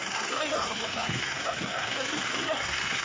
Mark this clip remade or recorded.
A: remade